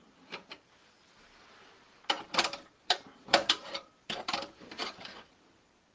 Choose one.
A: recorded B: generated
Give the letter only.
B